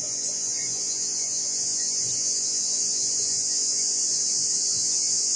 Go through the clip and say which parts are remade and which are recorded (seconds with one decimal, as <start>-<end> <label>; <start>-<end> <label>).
0.0-5.3 remade